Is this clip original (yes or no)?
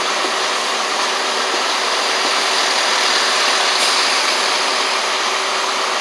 yes